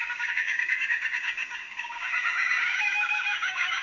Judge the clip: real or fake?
fake